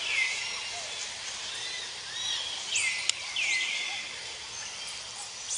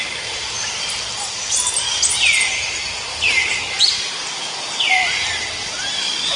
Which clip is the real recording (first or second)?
first